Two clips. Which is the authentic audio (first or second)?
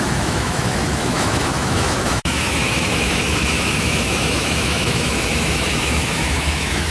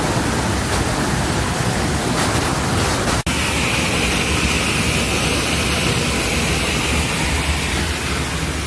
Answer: second